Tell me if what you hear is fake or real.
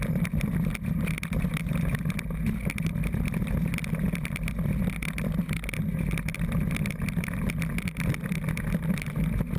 real